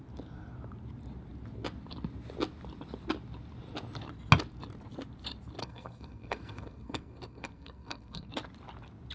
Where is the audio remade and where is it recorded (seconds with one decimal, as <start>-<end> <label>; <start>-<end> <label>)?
0.0-5.6 recorded; 5.6-8.3 remade; 8.3-9.1 recorded